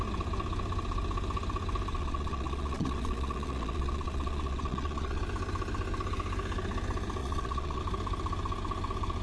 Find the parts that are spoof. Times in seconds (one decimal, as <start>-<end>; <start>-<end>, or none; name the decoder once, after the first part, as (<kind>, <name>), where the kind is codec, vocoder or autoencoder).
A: 1.9-5.2 (vocoder, Vocos); 7.2-7.8